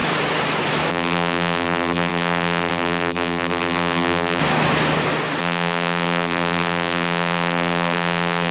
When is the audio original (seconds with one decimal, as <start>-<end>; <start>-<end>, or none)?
0.0-0.9; 4.4-5.4